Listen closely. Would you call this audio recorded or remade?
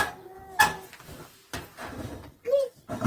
recorded